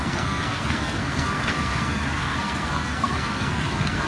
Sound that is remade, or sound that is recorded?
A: remade